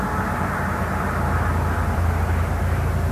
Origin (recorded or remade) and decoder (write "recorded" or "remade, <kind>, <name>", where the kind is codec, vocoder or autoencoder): recorded